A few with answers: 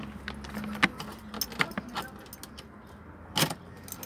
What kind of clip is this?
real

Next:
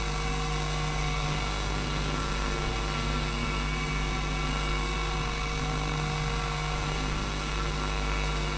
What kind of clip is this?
fake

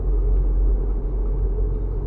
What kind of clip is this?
real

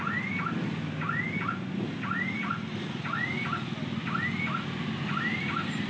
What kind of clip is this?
real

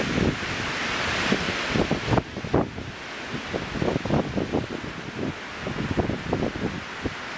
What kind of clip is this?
real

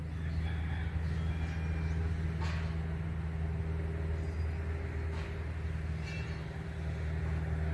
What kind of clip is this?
real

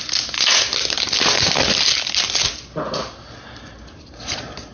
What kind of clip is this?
real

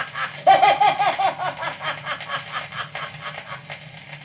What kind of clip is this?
real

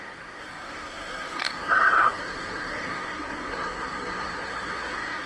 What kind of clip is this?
fake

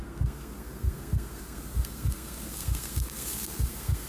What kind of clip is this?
fake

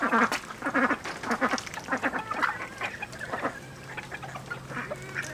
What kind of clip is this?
real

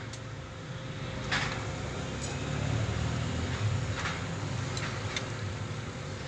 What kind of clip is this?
real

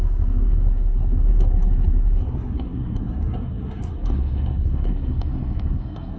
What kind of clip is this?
fake